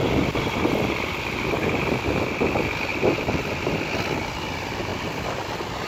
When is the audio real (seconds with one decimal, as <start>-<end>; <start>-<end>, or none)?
0.0-5.9